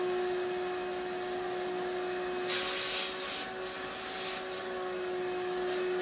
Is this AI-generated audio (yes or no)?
no